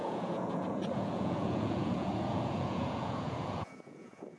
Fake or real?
fake